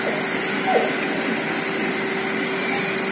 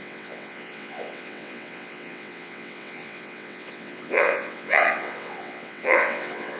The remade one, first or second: second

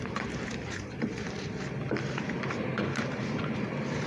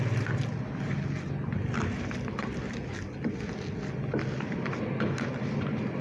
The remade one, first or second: first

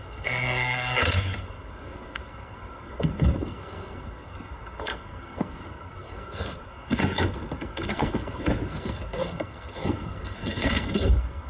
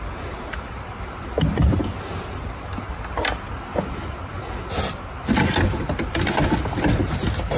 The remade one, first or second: first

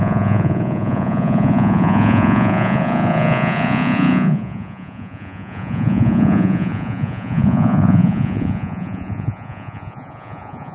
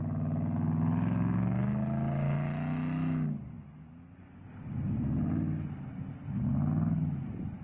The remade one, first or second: first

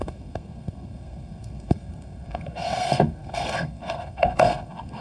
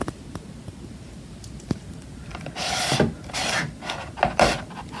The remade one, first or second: first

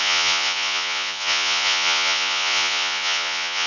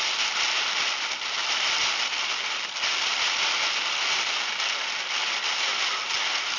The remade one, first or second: first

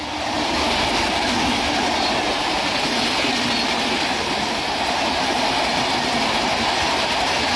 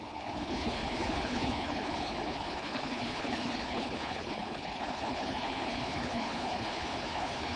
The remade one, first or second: second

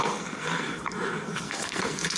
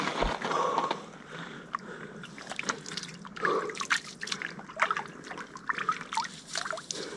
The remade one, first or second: first